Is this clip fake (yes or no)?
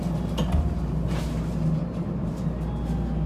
no